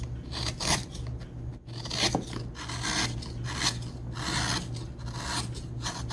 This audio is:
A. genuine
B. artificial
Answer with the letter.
A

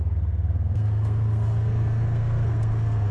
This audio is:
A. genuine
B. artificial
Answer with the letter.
B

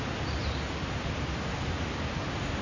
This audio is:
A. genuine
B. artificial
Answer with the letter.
A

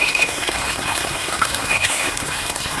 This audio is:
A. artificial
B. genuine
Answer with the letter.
A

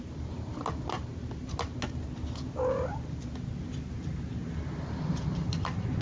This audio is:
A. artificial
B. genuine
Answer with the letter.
B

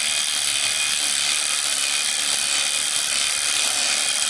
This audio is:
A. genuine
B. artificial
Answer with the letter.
A